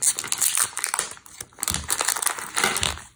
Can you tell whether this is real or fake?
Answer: real